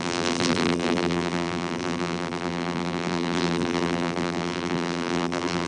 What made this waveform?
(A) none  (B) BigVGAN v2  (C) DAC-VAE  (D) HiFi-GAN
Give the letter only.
B